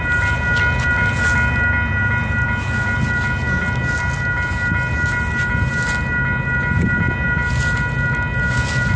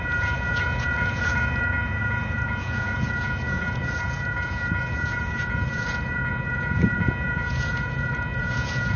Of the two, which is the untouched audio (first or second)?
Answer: first